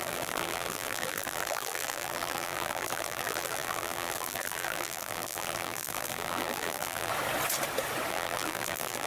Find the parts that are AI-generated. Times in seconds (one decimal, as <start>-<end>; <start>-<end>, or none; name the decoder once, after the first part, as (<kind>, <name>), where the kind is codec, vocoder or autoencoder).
0.0-7.1 (vocoder, BigVGAN v2); 8.1-9.1